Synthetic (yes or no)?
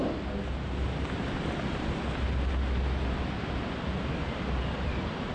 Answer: no